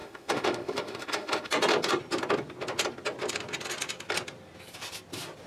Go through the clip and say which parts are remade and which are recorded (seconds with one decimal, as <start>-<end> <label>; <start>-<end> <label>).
0.0-1.5 remade; 1.5-5.5 recorded